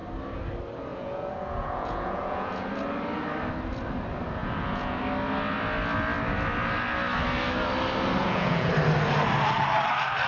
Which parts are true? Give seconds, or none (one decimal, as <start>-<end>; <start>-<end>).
0.0-0.9; 2.7-4.4; 5.0-8.2; 8.7-10.3